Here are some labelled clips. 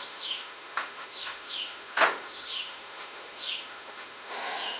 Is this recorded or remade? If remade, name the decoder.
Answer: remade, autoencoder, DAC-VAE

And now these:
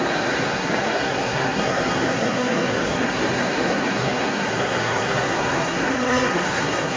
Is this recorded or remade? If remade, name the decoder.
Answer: remade, codec, SNAC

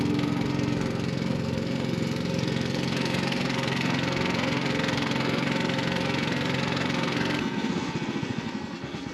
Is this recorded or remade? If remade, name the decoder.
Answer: remade, codec, SNAC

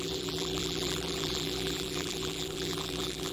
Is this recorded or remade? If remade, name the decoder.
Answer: remade, vocoder, BigVGAN v2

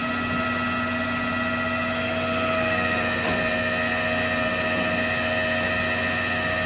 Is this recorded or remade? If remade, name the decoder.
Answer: recorded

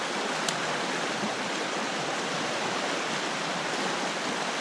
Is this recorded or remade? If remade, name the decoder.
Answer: recorded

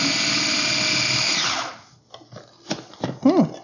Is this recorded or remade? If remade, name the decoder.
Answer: recorded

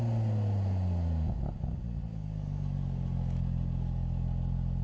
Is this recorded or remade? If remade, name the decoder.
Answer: recorded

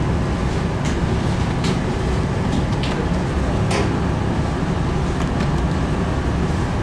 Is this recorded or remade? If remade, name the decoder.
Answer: recorded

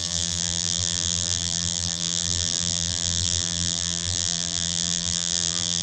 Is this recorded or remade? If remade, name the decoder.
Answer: remade, vocoder, BigVGAN v2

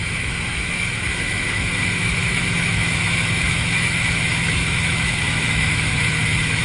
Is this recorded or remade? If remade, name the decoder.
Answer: remade, autoencoder, DAC-VAE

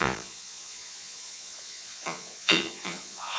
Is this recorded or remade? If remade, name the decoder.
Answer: remade, vocoder, Vocos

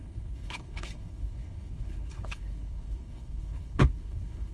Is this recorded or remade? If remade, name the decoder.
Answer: remade, codec, HILCodec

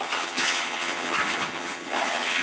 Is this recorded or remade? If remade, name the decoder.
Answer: remade, vocoder, HiFi-GAN